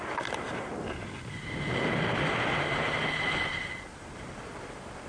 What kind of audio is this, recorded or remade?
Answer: recorded